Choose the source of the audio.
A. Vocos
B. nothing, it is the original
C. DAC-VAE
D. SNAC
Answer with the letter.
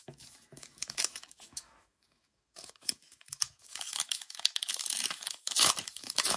C